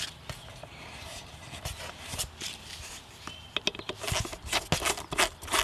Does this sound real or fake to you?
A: real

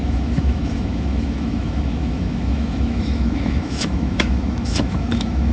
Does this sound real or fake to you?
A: fake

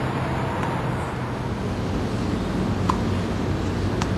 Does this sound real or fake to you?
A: real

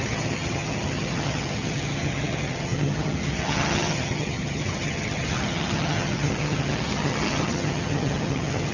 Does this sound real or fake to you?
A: fake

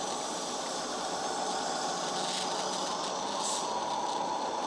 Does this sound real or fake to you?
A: real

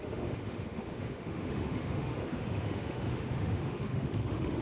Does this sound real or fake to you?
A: fake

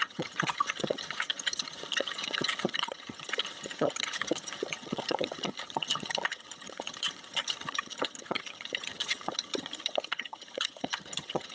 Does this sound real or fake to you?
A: fake